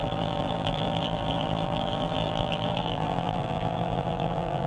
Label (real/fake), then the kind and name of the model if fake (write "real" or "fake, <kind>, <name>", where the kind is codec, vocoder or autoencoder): fake, vocoder, BigVGAN v2